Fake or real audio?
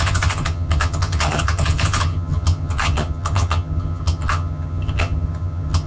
fake